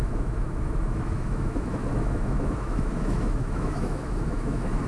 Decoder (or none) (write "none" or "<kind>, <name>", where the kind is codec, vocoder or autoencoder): autoencoder, DAC-VAE